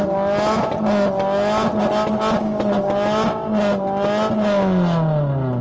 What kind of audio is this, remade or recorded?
recorded